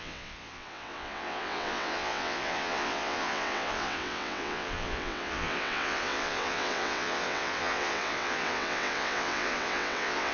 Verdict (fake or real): fake